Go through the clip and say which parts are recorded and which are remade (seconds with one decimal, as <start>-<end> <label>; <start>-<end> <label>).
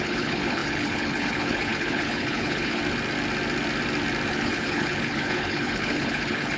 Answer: 0.0-2.8 remade; 2.8-4.3 recorded; 4.3-6.6 remade